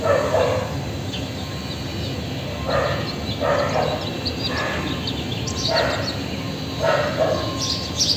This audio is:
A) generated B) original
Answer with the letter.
B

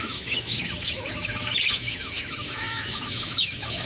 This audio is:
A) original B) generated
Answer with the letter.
B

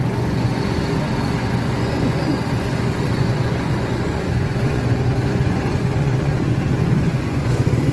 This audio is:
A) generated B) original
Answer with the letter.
A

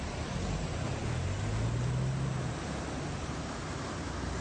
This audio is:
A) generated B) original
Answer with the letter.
B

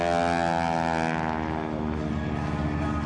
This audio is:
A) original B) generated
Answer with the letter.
A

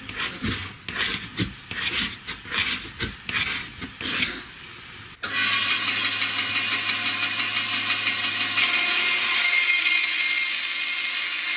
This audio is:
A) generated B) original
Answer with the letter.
B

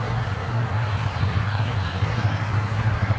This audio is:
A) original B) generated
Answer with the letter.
B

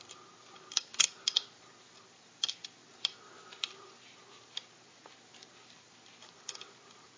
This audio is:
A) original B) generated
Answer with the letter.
B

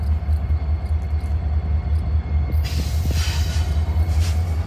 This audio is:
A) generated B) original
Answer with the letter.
B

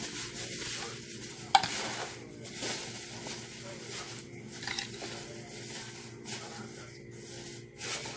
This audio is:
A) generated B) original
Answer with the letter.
B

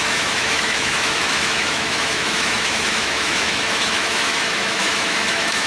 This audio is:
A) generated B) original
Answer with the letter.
A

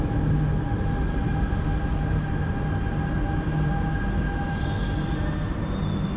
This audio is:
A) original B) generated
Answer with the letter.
A